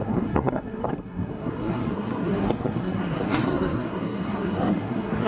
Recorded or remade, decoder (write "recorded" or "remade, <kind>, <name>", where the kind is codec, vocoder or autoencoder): remade, codec, SNAC